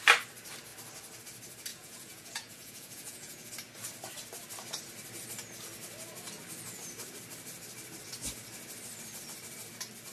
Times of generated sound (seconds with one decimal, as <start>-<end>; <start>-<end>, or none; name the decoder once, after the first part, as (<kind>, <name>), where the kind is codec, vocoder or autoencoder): 1.7-3.5 (vocoder, Vocos)